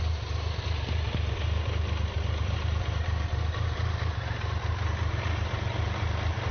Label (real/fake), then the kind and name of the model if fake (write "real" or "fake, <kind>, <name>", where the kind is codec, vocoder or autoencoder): real